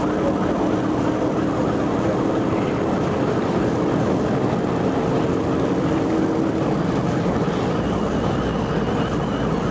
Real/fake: real